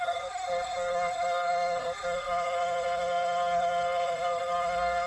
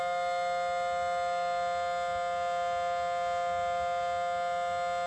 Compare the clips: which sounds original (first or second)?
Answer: second